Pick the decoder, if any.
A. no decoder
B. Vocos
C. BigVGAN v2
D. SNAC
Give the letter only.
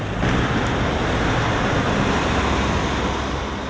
A